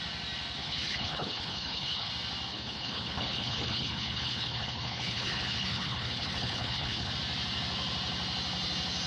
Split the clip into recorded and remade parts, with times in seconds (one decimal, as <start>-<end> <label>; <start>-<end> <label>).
0.0-0.6 recorded; 0.6-2.1 remade; 2.1-2.5 recorded; 2.5-7.1 remade; 7.1-9.1 recorded